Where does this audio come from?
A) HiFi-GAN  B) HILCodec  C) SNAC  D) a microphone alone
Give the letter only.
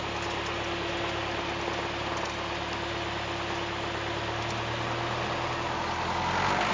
D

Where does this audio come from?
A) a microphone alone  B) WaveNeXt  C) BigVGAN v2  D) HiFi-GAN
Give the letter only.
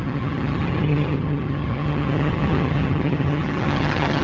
D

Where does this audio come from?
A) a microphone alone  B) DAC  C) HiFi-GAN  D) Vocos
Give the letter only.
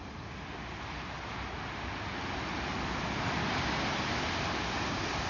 A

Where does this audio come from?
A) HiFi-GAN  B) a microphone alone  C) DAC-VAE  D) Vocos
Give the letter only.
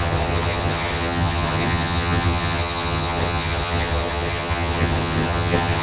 A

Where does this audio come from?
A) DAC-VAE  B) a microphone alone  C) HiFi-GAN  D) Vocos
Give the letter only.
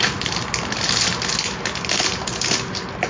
B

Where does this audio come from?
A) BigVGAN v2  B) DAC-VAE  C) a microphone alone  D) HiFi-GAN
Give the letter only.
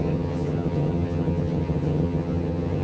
D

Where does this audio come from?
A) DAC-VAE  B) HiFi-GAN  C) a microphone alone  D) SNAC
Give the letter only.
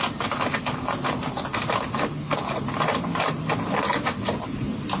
C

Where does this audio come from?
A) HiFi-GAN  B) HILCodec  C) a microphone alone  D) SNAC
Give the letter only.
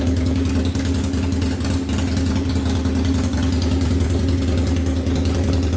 C